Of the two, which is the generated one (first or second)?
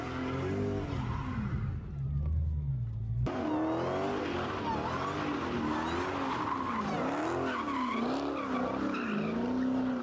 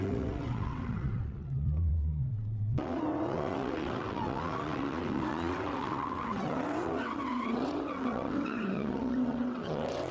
second